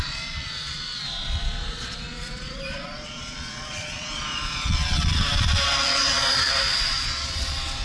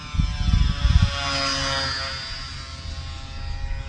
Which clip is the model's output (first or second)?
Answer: first